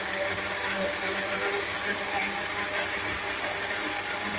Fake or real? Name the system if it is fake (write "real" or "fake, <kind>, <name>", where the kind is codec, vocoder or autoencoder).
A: real